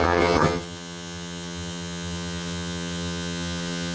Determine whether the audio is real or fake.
fake